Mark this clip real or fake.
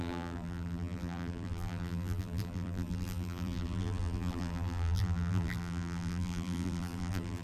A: fake